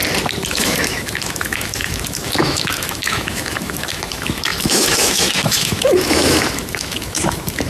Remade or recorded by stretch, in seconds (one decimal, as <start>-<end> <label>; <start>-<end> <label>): 0.0-0.5 recorded; 0.5-7.7 remade